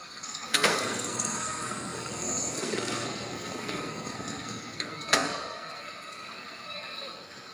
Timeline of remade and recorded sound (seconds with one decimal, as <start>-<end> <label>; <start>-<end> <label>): 0.0-7.5 remade